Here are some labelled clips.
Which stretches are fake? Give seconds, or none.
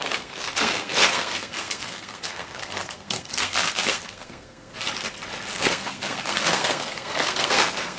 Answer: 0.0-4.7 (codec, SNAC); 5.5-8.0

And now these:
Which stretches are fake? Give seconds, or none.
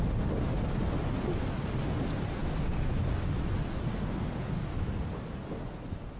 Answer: none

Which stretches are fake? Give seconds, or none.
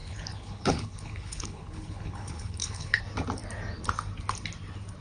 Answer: 0.0-3.0 (codec, HILCodec)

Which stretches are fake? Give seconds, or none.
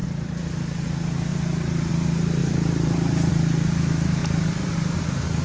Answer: 0.0-0.5 (vocoder, BigVGAN v2); 1.3-1.9; 2.4-3.3; 4.2-5.0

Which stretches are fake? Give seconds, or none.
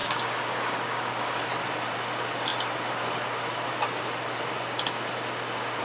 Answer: 0.0-1.5 (codec, DAC)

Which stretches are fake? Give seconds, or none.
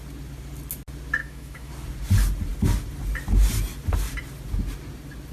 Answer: 1.2-1.7 (autoencoder, DAC-VAE)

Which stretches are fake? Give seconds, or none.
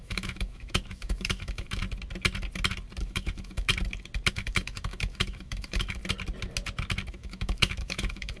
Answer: 0.0-1.8 (autoencoder, DAC-VAE); 3.0-3.7; 4.3-6.0; 7.1-8.4